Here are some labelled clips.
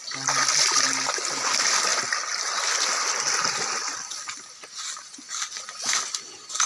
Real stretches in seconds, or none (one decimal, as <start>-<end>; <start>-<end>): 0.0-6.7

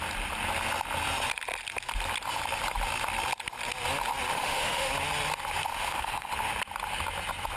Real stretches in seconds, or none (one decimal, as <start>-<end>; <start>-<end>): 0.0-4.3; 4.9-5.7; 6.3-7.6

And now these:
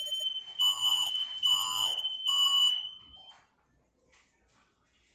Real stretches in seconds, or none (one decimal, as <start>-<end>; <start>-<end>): 0.0-0.9; 4.0-5.1